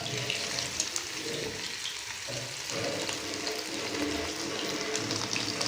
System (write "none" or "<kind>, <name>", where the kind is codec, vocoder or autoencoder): none